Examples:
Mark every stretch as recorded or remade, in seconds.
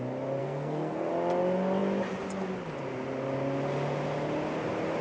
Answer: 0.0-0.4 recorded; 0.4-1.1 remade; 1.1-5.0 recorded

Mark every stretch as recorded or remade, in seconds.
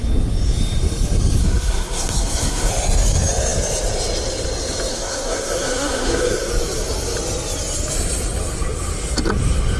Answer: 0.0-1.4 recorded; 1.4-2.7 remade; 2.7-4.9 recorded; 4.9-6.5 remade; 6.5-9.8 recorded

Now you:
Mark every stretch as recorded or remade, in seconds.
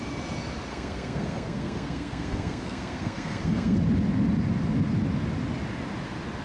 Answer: 0.0-0.7 recorded; 0.7-3.8 remade; 3.8-6.4 recorded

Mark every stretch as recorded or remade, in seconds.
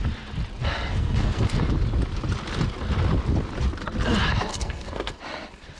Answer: 0.0-0.6 recorded; 0.6-1.6 remade; 1.6-4.5 recorded; 4.5-5.2 remade; 5.2-5.8 recorded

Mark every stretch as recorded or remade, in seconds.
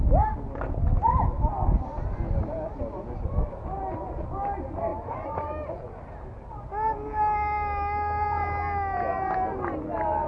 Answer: 0.0-10.3 recorded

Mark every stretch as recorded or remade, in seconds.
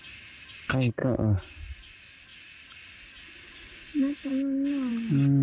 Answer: 0.0-5.4 recorded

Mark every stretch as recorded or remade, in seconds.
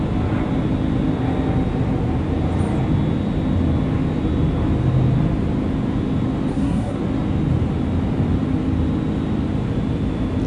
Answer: 0.0-6.5 recorded; 6.5-7.0 remade; 7.0-10.5 recorded